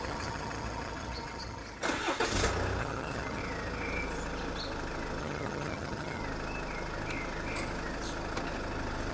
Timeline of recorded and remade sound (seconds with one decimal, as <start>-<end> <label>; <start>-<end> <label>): 0.0-1.6 remade; 1.6-2.8 recorded; 2.8-3.4 remade; 3.4-5.2 recorded; 5.2-6.2 remade; 6.2-9.1 recorded